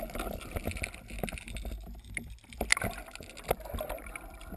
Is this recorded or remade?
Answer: recorded